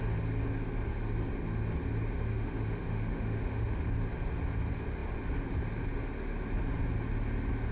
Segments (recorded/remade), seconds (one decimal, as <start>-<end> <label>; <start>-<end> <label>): 0.0-2.3 recorded; 2.3-3.9 remade; 3.9-7.7 recorded

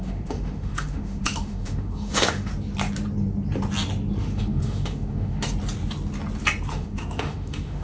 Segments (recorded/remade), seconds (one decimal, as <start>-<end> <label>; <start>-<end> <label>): 0.0-2.5 remade; 2.5-4.2 recorded; 4.2-5.5 remade; 5.5-6.7 recorded; 6.7-7.8 remade

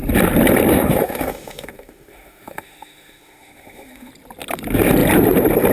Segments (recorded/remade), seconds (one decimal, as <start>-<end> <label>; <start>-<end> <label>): 0.0-0.7 recorded; 0.7-4.1 remade; 4.1-5.7 recorded

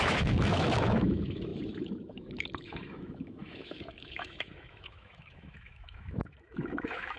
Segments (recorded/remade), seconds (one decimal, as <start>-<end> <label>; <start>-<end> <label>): 0.0-7.2 remade

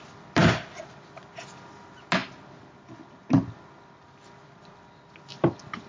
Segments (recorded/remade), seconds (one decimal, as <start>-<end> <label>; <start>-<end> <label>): 0.0-5.9 recorded

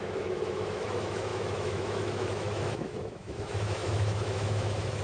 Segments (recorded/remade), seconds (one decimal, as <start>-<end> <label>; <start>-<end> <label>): 0.0-5.0 remade